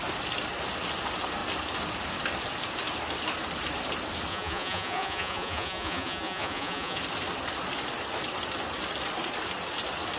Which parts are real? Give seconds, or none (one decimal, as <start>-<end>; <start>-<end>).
0.0-4.3; 7.0-10.2